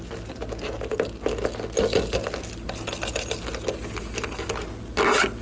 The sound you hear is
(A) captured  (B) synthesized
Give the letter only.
A